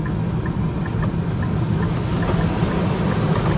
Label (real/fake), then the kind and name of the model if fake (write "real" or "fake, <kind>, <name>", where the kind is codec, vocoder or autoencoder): real